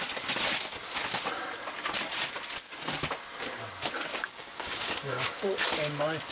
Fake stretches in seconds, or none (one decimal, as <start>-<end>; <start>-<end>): 4.1-5.4